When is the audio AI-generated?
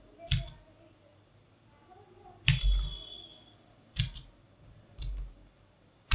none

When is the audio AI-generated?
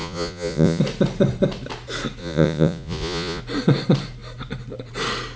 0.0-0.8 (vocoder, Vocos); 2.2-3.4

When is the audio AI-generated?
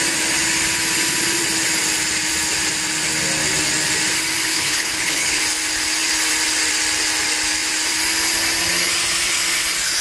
4.5-5.4 (codec, HILCodec)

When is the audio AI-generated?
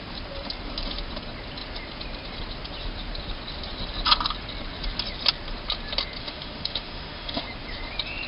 6.2-7.4 (autoencoder, DAC-VAE)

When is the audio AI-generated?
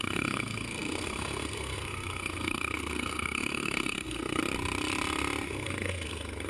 0.0-4.4 (codec, SNAC); 5.5-6.5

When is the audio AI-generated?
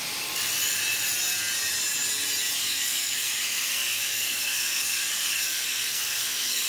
2.6-6.7 (codec, SNAC)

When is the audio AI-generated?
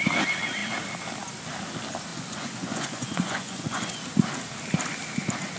2.1-4.0 (vocoder, Vocos)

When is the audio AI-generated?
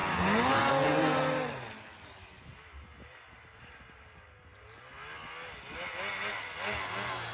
none